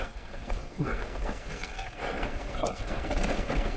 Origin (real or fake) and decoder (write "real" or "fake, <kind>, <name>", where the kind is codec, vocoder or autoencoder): fake, codec, SNAC